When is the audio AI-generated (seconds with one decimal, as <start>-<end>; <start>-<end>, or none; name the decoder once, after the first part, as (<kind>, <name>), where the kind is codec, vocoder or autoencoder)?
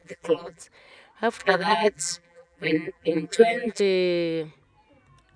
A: 0.0-0.6 (vocoder, BigVGAN v2); 1.4-3.8